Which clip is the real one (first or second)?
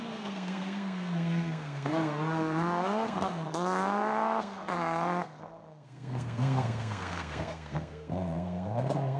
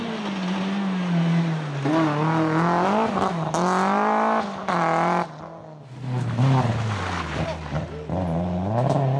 second